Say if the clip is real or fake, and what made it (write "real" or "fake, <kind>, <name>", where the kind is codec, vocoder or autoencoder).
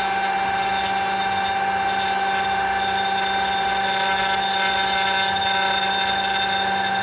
real